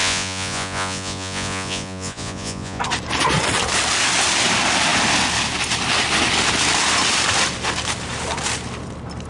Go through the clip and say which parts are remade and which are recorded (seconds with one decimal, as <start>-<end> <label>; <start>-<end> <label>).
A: 0.0-2.8 remade; 2.8-9.3 recorded